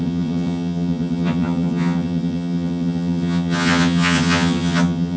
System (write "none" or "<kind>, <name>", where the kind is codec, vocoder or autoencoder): vocoder, HiFi-GAN